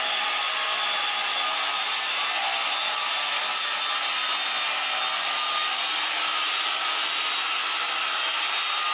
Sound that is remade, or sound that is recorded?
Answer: recorded